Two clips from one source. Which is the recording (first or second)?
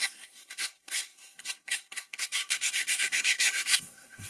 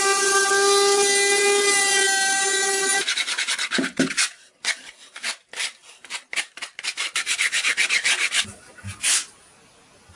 second